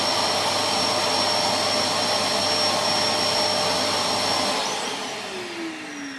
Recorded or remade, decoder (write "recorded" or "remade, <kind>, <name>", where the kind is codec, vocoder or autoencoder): recorded